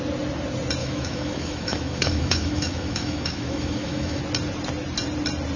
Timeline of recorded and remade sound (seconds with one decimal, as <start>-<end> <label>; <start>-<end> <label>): 0.0-0.8 recorded; 0.8-4.2 remade; 4.2-5.6 recorded